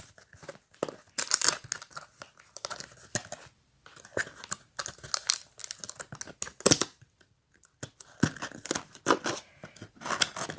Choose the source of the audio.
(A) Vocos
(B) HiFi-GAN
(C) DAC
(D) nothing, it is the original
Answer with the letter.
D